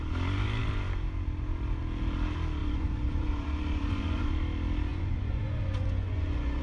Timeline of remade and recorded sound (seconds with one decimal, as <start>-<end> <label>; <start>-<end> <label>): 0.0-2.6 recorded; 2.6-4.3 remade; 4.3-4.9 recorded; 4.9-6.6 remade